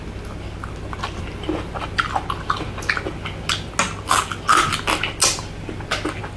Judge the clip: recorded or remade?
recorded